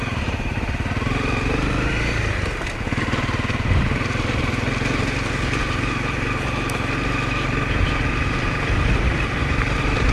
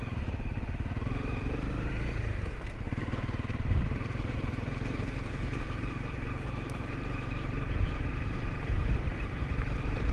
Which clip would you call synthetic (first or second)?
second